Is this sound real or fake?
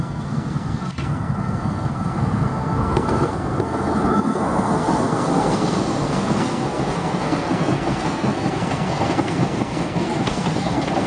fake